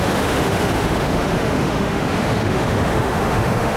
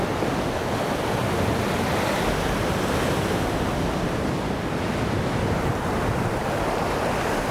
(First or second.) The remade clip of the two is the first